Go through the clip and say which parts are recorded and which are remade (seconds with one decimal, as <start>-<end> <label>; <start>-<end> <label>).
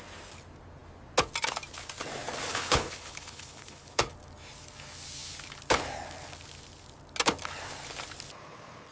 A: 0.0-2.5 recorded; 2.5-4.0 remade; 4.0-8.9 recorded